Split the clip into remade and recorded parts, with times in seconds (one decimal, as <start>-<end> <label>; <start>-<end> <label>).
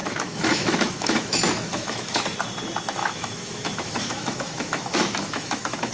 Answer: 0.0-2.2 remade; 2.2-3.0 recorded; 3.0-5.9 remade